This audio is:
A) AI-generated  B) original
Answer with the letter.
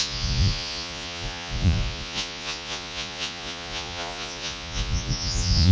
A